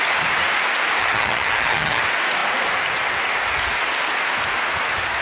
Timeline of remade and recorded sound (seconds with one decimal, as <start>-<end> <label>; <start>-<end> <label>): 0.0-1.0 recorded; 1.0-2.0 remade; 2.0-5.2 recorded